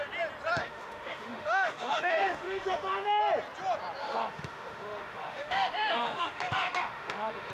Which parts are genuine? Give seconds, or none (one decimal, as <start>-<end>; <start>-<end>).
0.0-0.6; 3.2-4.0